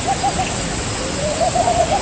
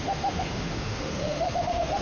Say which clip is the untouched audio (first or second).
first